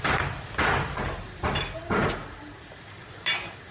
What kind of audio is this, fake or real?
real